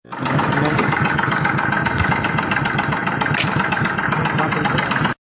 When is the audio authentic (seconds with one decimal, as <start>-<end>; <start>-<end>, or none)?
0.0-5.3